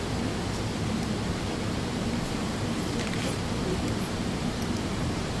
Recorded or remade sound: remade